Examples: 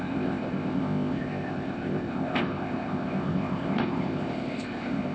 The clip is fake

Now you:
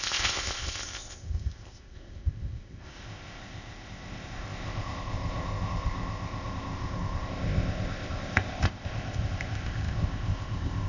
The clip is fake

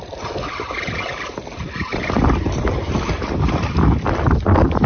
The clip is real